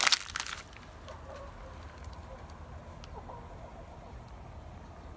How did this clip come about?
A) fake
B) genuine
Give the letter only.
B